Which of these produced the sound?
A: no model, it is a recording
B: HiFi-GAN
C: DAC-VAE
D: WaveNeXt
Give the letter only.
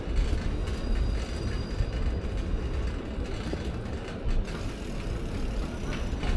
A